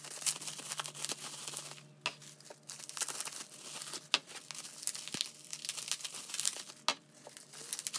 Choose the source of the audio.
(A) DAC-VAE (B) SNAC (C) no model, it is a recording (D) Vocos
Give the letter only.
C